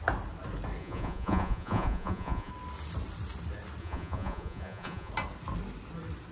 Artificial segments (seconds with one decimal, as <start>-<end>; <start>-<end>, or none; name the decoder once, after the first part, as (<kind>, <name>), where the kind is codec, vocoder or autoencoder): 0.8-2.5 (vocoder, Vocos); 3.8-5.1